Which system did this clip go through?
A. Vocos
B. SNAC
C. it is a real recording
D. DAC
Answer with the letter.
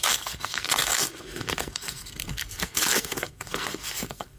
B